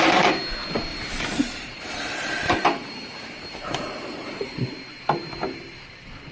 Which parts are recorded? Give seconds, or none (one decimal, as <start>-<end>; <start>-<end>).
0.0-0.9; 4.7-6.3